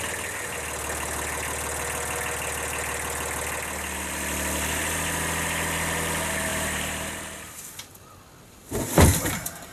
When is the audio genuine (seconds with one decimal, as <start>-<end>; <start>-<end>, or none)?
0.0-6.5; 7.2-9.7